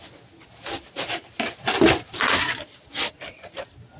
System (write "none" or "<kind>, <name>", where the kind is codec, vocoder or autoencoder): none